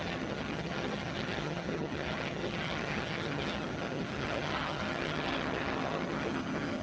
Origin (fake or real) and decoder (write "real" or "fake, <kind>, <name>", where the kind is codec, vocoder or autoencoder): fake, vocoder, HiFi-GAN